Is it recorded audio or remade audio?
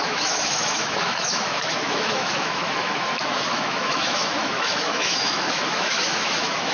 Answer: remade